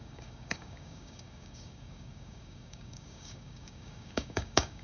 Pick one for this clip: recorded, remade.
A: remade